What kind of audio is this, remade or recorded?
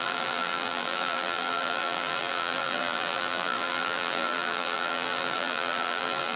remade